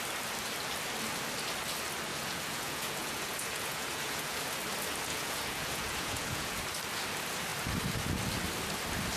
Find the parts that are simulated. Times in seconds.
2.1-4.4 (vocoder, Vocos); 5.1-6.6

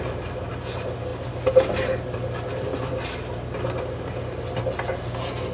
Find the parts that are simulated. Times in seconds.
none

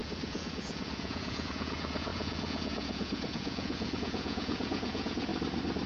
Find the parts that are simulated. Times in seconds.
0.0-5.3 (vocoder, Vocos)

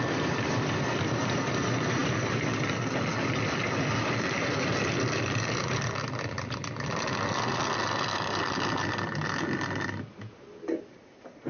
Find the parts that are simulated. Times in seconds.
none

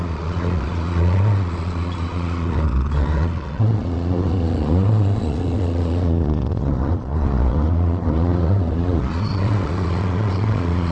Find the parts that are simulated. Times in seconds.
0.0-10.9 (vocoder, Vocos)

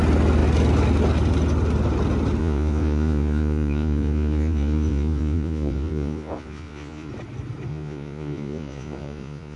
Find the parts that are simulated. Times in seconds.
2.4-7.1 (vocoder, Vocos); 7.7-9.6

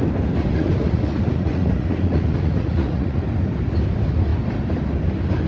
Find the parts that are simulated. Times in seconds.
0.5-3.2 (vocoder, Vocos)